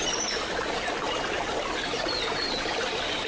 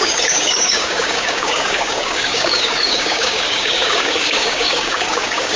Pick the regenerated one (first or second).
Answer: second